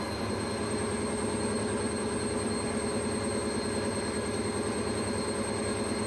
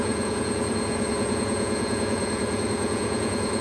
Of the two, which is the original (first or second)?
first